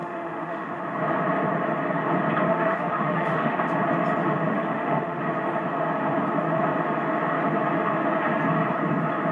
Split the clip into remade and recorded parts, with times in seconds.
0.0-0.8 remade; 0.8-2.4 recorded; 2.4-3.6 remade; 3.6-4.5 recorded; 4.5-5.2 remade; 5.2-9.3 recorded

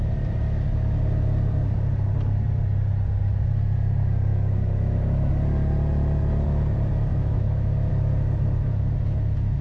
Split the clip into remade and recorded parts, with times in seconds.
0.0-4.3 recorded; 4.3-5.3 remade; 5.3-7.1 recorded; 7.1-7.9 remade; 7.9-9.6 recorded

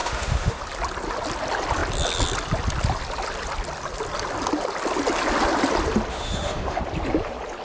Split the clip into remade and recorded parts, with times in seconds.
0.0-0.6 remade; 0.6-6.1 recorded; 6.1-6.8 remade; 6.8-7.6 recorded

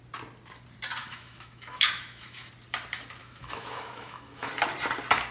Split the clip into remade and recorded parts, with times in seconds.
0.0-1.0 recorded; 1.0-2.5 remade; 2.5-3.2 recorded; 3.2-4.5 remade; 4.5-5.3 recorded

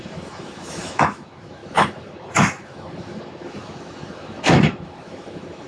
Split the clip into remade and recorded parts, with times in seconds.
0.0-5.7 remade

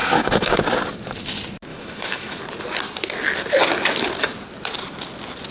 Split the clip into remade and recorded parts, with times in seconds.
0.0-0.6 remade; 0.6-1.7 recorded; 1.7-2.4 remade; 2.4-5.5 recorded

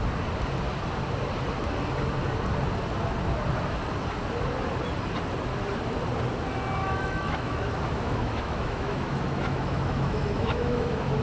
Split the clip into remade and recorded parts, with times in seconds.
0.0-6.8 recorded; 6.8-11.2 remade

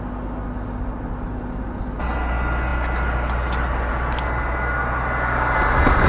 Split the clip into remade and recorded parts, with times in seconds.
0.0-6.1 recorded